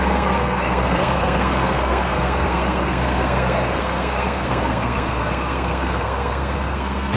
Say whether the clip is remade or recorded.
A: remade